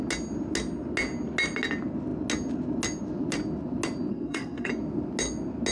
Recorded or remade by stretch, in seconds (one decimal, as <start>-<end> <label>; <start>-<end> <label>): 0.0-4.1 recorded; 4.1-4.7 remade; 4.7-5.7 recorded